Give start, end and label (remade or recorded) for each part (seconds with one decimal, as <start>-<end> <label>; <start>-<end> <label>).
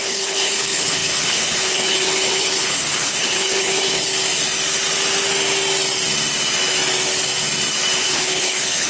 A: 0.0-4.1 remade; 4.1-8.0 recorded; 8.0-8.9 remade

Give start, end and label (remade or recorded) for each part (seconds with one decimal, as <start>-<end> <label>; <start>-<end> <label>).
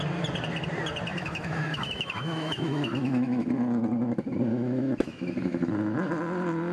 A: 0.0-1.1 recorded; 1.1-3.5 remade; 3.5-4.5 recorded; 4.5-5.7 remade; 5.7-6.7 recorded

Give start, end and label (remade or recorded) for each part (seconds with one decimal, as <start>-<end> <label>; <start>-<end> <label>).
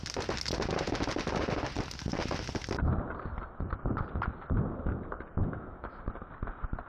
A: 0.0-5.4 recorded; 5.4-6.0 remade; 6.0-6.9 recorded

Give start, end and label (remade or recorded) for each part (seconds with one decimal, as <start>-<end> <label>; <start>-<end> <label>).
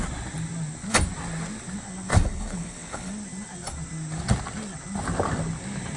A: 0.0-2.1 recorded; 2.1-3.1 remade; 3.1-6.0 recorded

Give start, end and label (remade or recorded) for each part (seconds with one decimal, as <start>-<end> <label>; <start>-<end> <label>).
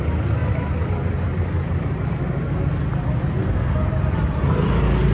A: 0.0-3.4 recorded; 3.4-3.9 remade; 3.9-5.1 recorded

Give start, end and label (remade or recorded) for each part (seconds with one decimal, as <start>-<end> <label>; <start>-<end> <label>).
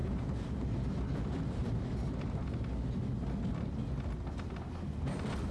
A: 0.0-1.0 remade; 1.0-1.6 recorded; 1.6-2.4 remade; 2.4-5.5 recorded